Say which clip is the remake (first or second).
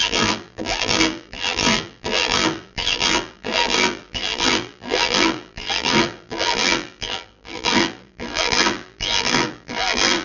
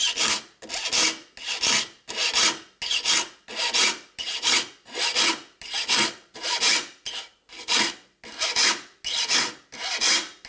first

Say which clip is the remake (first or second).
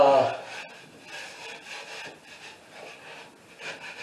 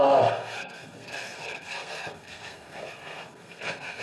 second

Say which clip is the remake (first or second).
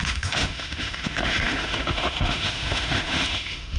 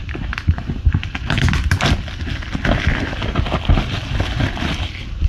first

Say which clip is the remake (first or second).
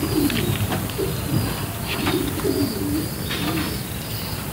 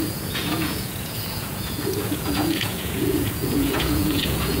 second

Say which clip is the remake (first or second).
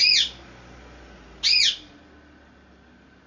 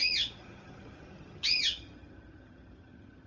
second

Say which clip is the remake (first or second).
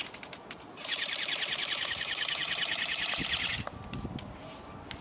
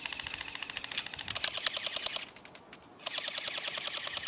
first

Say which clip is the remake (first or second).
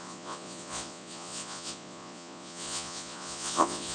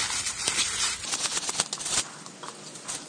first